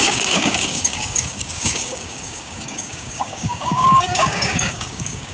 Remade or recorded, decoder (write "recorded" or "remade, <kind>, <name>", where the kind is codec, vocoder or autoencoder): remade, codec, DAC